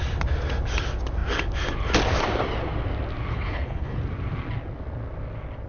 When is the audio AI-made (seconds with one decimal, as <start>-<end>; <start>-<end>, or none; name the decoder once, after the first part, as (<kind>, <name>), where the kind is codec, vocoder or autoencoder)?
3.3-4.0 (codec, HILCodec)